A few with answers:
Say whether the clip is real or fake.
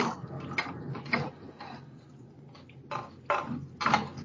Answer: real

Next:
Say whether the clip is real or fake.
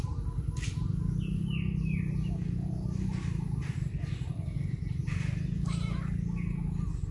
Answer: real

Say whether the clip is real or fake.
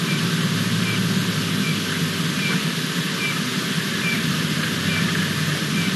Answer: real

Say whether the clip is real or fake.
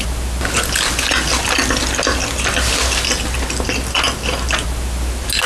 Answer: real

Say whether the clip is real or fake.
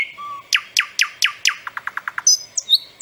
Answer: real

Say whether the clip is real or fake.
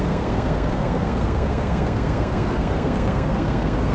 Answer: fake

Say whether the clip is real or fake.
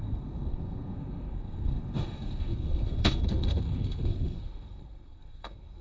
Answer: fake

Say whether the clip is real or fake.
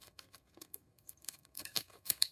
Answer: fake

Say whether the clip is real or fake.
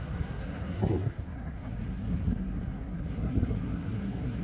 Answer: fake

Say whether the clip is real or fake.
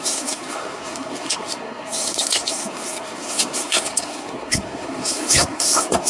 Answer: fake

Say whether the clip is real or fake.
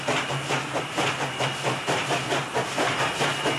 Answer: real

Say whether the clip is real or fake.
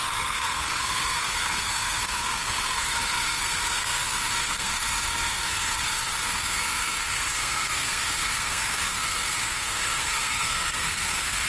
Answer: fake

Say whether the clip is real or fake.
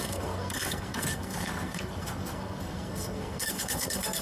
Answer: fake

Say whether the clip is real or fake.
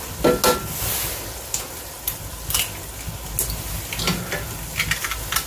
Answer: real